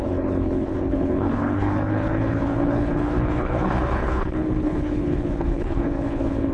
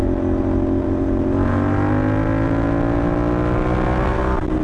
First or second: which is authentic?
second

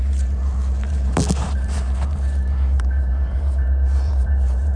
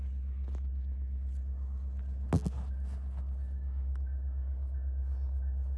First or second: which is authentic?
second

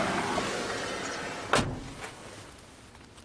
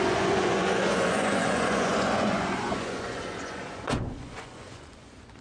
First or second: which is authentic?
first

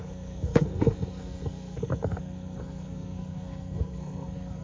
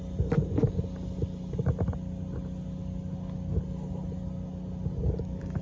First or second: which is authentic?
second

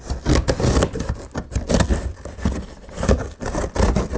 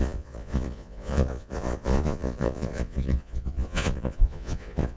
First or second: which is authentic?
first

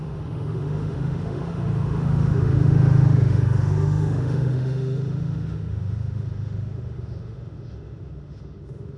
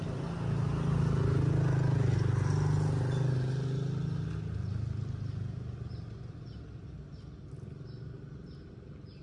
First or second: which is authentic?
second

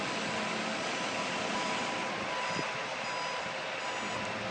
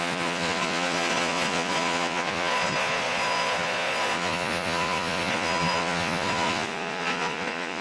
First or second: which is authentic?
first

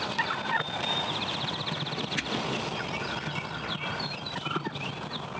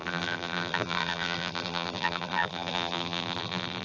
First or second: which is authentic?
first